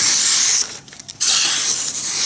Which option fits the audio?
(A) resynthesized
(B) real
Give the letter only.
A